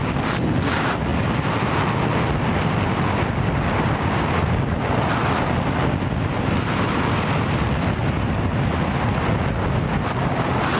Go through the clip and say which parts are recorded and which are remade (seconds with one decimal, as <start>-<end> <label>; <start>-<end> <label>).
0.0-8.0 recorded; 8.0-9.1 remade; 9.1-10.8 recorded